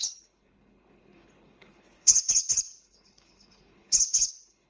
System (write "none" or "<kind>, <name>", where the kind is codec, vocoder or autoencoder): codec, HILCodec